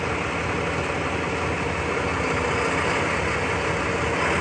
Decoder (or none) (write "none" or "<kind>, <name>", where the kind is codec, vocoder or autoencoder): none